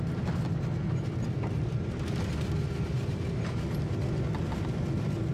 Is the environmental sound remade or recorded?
recorded